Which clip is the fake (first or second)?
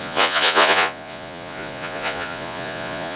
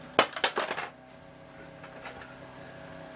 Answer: first